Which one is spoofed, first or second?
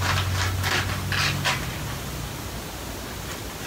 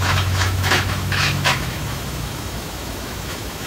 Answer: second